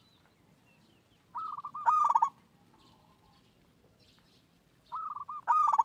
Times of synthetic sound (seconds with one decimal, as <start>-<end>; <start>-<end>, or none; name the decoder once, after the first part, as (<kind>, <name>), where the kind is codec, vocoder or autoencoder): none